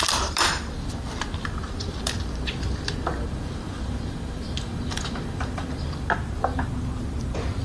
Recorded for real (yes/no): no